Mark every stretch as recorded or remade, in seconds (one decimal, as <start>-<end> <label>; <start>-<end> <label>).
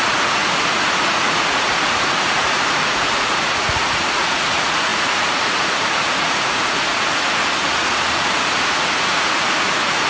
0.0-10.1 remade